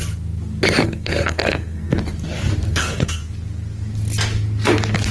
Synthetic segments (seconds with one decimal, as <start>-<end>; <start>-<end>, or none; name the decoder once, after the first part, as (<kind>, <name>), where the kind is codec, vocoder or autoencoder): 0.8-2.0 (codec, SNAC); 2.7-3.2